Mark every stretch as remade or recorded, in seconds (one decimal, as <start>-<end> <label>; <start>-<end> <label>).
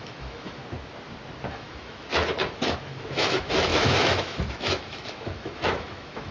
0.0-0.6 remade; 0.6-1.5 recorded; 1.5-6.3 remade